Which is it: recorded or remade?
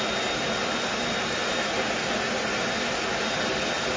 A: recorded